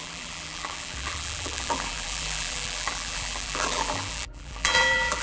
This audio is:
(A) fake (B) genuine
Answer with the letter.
A